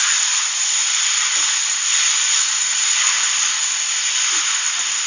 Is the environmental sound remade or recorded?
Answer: recorded